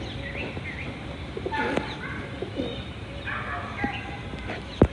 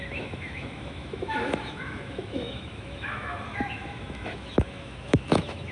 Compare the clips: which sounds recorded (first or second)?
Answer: first